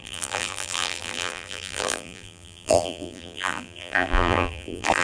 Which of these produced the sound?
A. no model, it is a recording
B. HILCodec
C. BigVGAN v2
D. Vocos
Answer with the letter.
C